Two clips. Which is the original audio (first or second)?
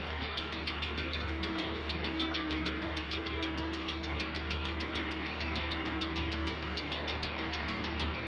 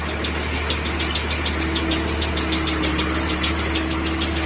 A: second